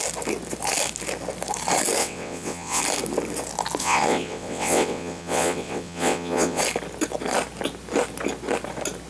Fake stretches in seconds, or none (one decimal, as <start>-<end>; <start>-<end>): 2.0-2.8; 3.8-6.6

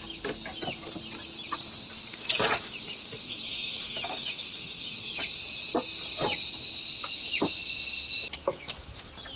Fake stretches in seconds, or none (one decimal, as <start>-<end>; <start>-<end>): 2.1-5.2; 8.4-9.0

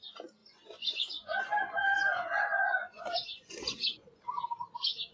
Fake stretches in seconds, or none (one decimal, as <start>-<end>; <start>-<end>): 0.4-1.4; 2.1-4.2

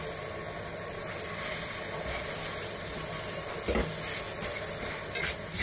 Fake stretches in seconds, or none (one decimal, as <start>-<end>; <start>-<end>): none

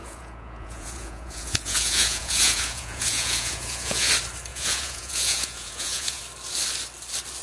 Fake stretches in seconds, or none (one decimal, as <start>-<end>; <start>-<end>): 0.0-4.1; 4.5-6.2

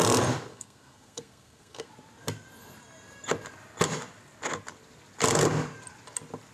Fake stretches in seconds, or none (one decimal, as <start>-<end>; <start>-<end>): 0.5-1.9

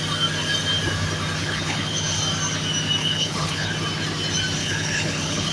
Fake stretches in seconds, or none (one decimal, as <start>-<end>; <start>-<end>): 1.4-2.2; 3.0-3.7; 4.6-5.5

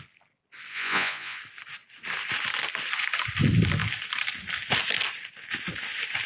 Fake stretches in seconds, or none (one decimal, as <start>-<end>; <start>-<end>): 0.7-1.4